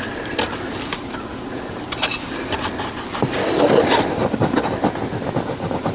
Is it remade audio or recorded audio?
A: recorded